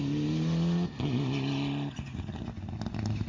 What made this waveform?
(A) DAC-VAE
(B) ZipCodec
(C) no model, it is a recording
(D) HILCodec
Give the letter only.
C